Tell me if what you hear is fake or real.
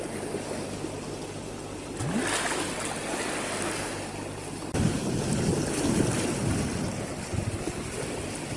real